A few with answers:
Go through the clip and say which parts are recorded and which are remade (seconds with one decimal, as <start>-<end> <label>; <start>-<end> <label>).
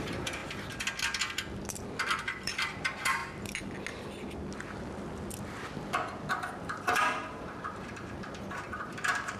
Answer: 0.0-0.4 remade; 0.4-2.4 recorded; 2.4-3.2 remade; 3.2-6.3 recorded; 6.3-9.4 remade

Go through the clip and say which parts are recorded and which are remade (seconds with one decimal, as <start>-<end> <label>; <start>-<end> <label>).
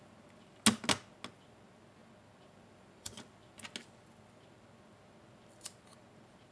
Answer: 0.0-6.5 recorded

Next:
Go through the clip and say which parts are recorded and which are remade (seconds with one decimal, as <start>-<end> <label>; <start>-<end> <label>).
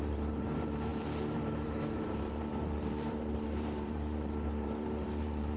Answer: 0.0-5.6 remade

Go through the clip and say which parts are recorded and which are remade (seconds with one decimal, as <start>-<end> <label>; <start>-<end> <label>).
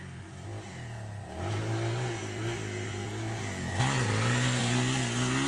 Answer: 0.0-5.5 recorded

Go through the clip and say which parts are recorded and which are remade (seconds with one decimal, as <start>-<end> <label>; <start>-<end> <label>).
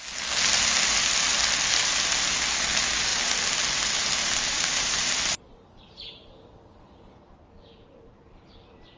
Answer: 0.0-4.2 recorded; 4.2-8.5 remade; 8.5-9.0 recorded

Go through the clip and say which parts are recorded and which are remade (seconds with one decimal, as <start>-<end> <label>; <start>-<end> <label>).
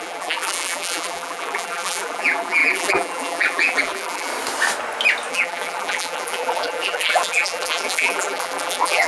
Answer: 0.0-4.3 remade; 4.3-5.3 recorded; 5.3-9.1 remade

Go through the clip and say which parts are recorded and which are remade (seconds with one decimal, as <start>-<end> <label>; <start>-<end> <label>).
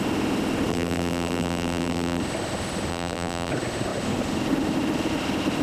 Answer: 0.0-0.7 recorded; 0.7-2.2 remade; 2.2-2.9 recorded; 2.9-3.5 remade; 3.5-5.6 recorded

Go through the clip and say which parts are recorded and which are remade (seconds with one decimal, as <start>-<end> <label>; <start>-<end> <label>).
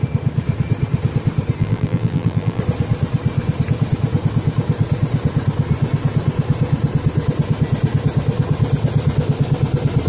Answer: 0.0-1.6 recorded; 1.6-2.6 remade; 2.6-10.1 recorded